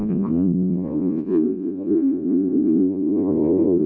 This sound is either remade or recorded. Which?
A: remade